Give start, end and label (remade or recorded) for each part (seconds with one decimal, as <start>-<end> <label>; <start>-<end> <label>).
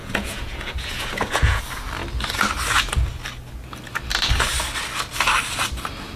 0.0-1.6 remade; 1.6-6.2 recorded